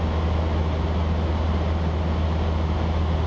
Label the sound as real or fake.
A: real